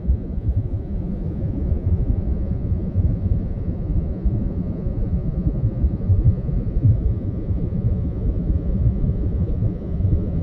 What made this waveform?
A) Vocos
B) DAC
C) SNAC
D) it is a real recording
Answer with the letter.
A